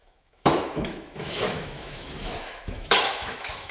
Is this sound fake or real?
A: fake